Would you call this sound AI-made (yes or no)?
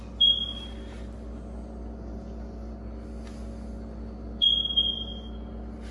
no